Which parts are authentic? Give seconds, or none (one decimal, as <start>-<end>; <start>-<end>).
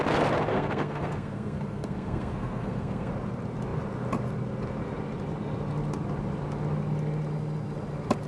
0.0-0.5; 3.1-8.3